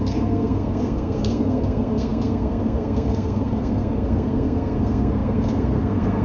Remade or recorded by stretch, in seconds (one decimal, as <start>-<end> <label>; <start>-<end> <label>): 0.0-6.2 remade